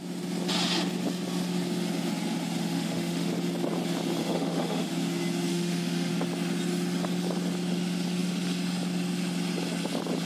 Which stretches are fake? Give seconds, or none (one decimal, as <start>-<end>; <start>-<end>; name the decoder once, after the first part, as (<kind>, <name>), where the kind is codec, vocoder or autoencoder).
2.6-3.3 (autoencoder, DAC-VAE); 4.2-4.9; 5.5-6.1